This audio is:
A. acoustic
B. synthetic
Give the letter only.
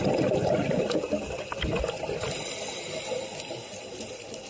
A